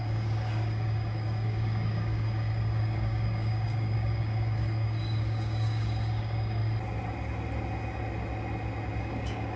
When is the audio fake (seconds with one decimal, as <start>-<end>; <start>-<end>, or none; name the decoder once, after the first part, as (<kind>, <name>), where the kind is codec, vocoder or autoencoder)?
0.0-6.6 (codec, DAC); 9.0-9.6